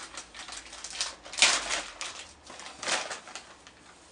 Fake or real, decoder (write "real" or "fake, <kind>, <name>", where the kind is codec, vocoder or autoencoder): real